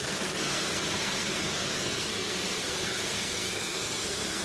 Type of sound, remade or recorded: remade